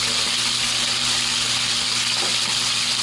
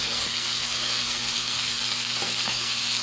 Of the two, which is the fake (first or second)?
second